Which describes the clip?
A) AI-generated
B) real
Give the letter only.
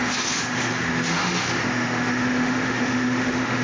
A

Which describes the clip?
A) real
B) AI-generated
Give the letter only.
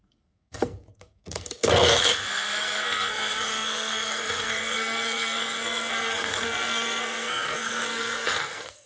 B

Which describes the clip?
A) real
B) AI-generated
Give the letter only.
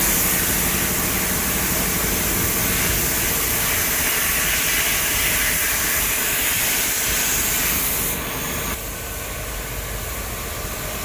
A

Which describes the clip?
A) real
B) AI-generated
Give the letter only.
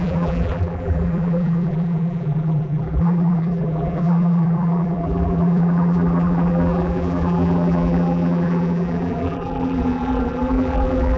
B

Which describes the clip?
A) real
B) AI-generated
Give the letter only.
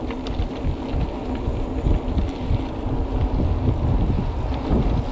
A